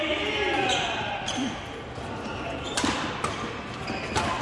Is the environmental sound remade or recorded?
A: recorded